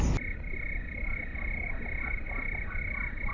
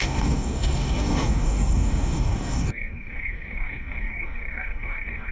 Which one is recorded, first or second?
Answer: first